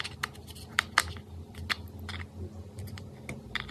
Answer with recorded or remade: recorded